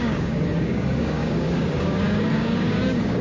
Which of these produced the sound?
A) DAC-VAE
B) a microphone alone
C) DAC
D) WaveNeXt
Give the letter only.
C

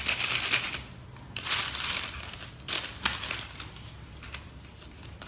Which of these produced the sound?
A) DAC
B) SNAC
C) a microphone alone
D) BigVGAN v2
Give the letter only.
C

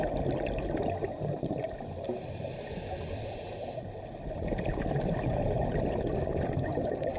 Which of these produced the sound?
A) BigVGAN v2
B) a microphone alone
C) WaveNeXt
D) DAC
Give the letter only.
B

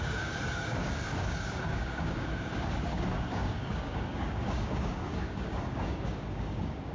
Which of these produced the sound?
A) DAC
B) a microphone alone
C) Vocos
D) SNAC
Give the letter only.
A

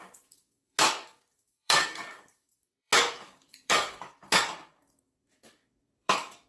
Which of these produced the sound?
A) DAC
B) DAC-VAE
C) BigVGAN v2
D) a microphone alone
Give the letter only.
A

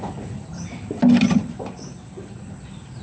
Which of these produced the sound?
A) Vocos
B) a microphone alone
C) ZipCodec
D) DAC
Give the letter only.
B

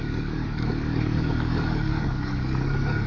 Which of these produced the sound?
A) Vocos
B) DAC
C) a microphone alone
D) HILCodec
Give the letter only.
B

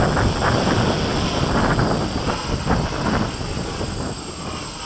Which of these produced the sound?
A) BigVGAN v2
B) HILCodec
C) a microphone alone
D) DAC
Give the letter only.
C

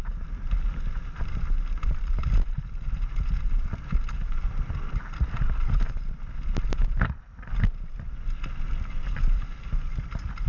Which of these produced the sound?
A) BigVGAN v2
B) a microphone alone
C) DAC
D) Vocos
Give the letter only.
B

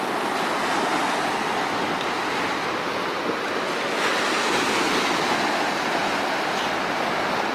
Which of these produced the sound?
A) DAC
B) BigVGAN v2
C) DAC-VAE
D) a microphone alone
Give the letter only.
D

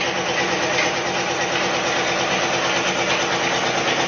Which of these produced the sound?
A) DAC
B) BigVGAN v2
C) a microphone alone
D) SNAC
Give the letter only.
C